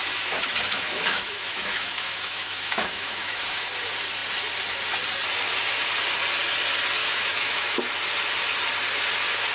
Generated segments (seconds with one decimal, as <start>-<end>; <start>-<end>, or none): 0.0-3.7; 7.0-7.8